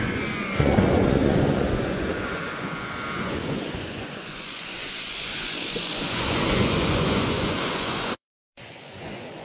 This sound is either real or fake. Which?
fake